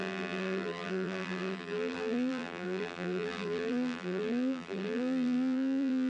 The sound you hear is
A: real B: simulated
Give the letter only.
B